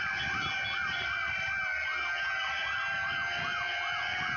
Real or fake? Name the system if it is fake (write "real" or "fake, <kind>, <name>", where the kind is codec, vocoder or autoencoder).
real